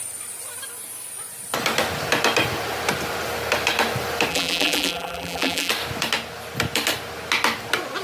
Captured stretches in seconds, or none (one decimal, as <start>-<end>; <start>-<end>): 0.0-4.3; 5.7-8.0